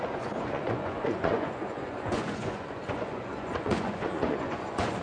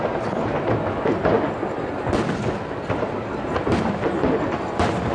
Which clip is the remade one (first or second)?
first